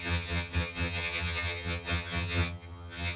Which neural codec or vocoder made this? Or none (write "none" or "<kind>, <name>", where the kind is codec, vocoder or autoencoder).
vocoder, HiFi-GAN